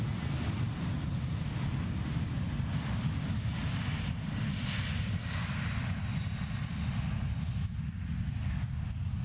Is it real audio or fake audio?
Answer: real